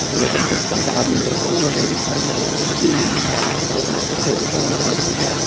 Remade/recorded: remade